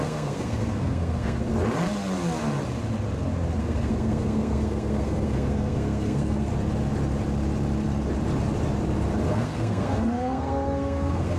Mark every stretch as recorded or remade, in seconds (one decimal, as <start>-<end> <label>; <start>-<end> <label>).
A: 0.0-1.5 remade; 1.5-3.6 recorded; 3.6-6.5 remade; 6.5-9.3 recorded; 9.3-11.4 remade